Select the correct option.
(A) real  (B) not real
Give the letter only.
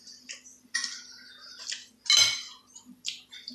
A